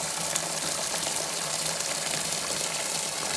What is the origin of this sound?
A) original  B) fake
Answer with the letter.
A